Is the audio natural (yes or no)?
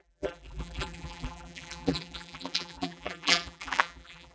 no